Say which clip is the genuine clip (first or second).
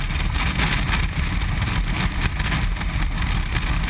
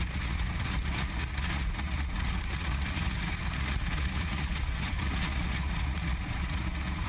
first